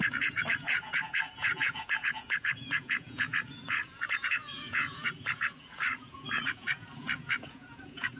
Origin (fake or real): fake